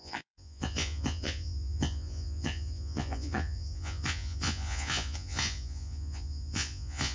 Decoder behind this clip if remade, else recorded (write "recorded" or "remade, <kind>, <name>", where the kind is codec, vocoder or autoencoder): remade, vocoder, Vocos